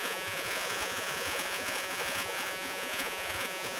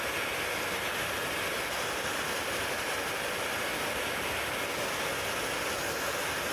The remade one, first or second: first